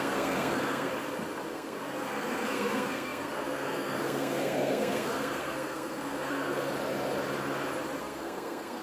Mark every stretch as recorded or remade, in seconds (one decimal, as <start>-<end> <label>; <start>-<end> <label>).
0.0-0.9 remade; 0.9-1.5 recorded; 1.5-6.7 remade; 6.7-8.0 recorded; 8.0-8.8 remade